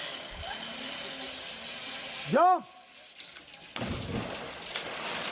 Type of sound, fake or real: real